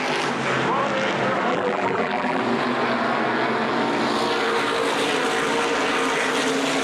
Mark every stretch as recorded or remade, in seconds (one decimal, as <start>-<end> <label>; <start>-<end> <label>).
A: 0.0-1.5 recorded; 1.5-2.4 remade; 2.4-6.8 recorded